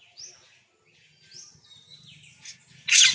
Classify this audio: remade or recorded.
recorded